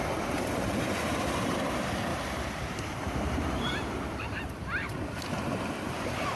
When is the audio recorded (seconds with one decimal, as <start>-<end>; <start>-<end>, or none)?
0.0-1.1; 1.6-2.1; 5.7-6.4